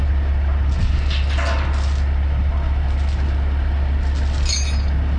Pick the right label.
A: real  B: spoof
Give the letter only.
A